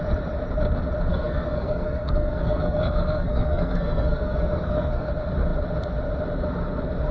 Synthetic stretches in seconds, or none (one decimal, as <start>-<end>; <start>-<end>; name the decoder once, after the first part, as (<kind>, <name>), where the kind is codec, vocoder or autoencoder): 1.1-5.1 (codec, SNAC)